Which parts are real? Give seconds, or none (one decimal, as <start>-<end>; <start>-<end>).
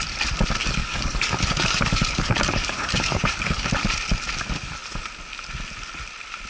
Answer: 0.0-0.6; 3.7-6.5